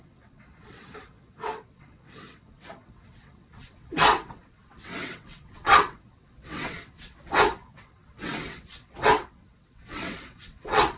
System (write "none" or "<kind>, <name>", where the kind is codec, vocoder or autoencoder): vocoder, WaveNeXt